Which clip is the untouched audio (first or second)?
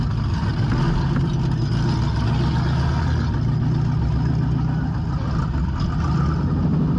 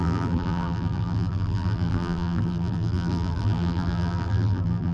first